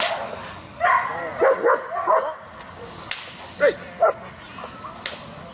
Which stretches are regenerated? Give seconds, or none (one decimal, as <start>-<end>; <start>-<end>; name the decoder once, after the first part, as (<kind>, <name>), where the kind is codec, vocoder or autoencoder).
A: none